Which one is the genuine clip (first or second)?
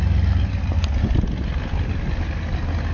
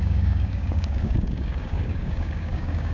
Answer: first